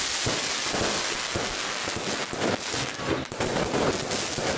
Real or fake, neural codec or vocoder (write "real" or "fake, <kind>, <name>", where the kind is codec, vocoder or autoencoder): real